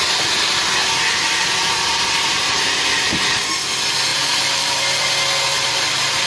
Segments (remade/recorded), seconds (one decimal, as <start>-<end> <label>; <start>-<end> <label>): 0.0-1.6 recorded; 1.6-2.8 remade; 2.8-4.1 recorded; 4.1-4.8 remade; 4.8-5.5 recorded; 5.5-6.3 remade